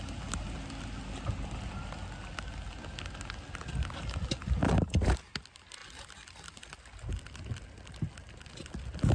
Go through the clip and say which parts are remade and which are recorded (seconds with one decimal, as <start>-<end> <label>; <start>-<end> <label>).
0.0-5.8 recorded; 5.8-7.1 remade; 7.1-9.1 recorded